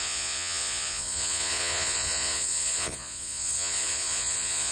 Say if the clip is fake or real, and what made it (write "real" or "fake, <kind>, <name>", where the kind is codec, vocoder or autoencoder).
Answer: fake, vocoder, Vocos